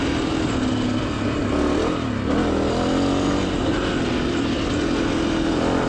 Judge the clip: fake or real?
real